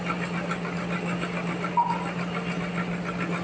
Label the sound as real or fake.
real